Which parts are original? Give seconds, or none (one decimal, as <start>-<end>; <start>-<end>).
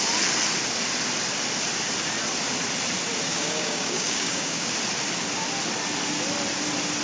0.0-3.3; 4.7-7.0